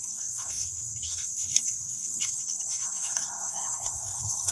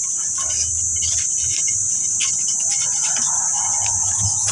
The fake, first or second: first